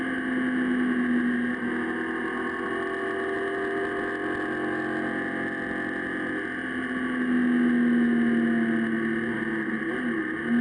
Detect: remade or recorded recorded